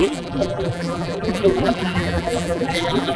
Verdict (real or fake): fake